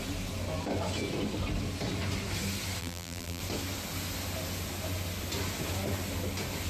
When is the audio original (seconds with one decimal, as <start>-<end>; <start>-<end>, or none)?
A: 0.0-2.8; 3.4-6.7